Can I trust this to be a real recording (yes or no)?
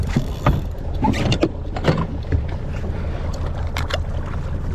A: yes